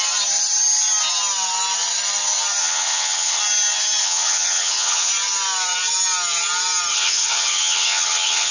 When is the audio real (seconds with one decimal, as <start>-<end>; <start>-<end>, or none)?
0.0-2.6; 3.4-4.0; 5.1-6.9